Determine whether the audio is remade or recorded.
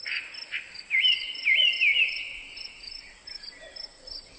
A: recorded